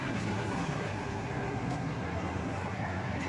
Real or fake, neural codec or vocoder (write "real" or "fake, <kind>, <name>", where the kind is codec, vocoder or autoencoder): fake, codec, SNAC